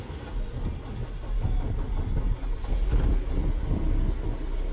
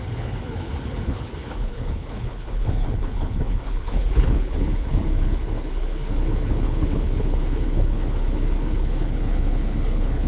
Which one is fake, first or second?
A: second